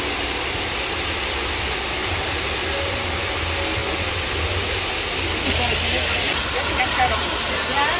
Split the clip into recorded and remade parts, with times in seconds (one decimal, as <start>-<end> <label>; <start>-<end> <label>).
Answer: 0.0-8.0 recorded